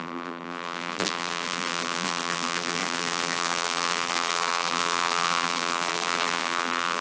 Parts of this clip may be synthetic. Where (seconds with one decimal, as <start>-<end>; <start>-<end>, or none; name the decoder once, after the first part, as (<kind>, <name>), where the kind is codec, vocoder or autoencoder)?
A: 0.0-7.0 (vocoder, BigVGAN v2)